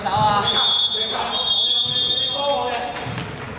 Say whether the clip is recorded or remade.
recorded